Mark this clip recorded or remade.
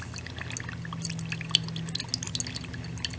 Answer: recorded